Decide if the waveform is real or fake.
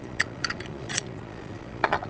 fake